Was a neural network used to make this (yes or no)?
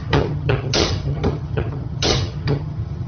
yes